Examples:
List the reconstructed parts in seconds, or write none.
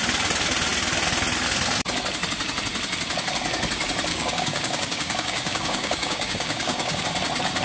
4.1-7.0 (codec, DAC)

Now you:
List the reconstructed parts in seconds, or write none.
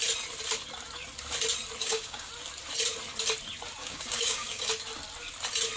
1.8-2.3 (codec, DAC); 3.8-4.7